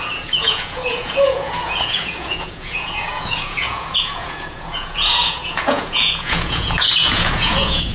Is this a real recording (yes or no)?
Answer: no